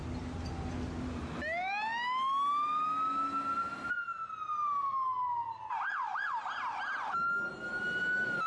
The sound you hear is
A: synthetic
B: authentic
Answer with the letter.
B